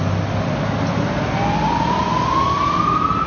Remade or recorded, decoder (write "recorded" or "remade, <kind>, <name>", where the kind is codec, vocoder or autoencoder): recorded